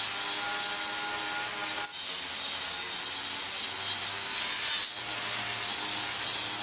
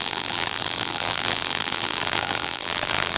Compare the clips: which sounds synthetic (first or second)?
second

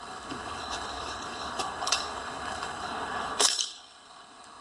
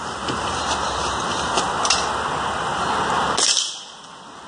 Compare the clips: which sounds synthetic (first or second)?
first